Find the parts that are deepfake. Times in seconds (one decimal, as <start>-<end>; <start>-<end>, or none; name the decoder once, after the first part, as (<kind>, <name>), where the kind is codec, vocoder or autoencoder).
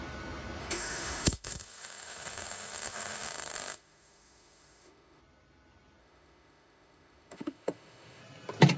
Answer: 0.6-5.2 (autoencoder, DAC-VAE); 6.0-8.2